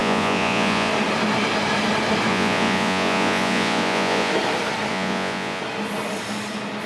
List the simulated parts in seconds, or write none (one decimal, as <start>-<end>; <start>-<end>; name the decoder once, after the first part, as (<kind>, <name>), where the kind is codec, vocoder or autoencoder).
0.0-0.9 (vocoder, Vocos); 2.3-4.3; 4.9-5.6